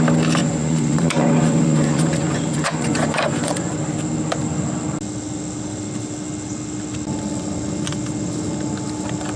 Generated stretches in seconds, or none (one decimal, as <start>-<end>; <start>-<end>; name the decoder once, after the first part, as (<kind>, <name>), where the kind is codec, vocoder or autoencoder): 0.4-3.7 (vocoder, Vocos)